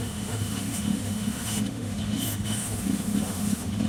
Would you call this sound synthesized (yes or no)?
yes